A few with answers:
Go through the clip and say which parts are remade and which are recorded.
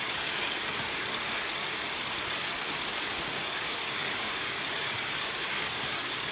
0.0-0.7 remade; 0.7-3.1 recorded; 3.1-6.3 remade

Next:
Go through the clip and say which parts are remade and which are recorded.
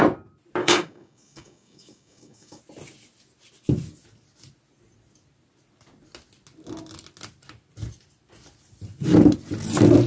0.0-0.6 recorded; 0.6-2.6 remade; 2.6-10.1 recorded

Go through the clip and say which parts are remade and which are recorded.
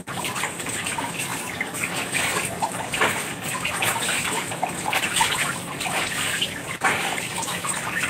0.0-8.1 remade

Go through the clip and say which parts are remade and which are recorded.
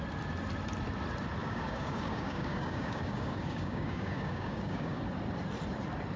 0.0-1.4 recorded; 1.4-5.0 remade; 5.0-6.2 recorded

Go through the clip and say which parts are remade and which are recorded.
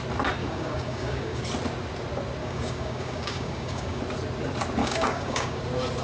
0.0-0.4 recorded; 0.4-1.4 remade; 1.4-2.4 recorded; 2.4-4.0 remade; 4.0-4.8 recorded; 4.8-5.6 remade; 5.6-6.0 recorded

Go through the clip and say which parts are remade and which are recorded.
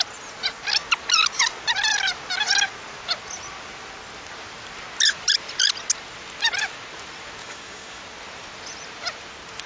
0.0-7.4 recorded; 7.4-8.0 remade; 8.0-9.7 recorded